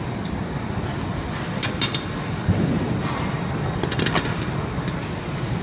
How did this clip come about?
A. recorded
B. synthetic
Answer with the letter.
A